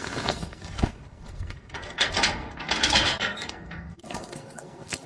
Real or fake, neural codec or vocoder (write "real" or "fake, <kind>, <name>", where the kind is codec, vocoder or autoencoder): fake, codec, SNAC